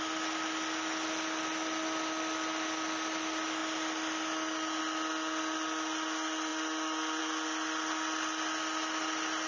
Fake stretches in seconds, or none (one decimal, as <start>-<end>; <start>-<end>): none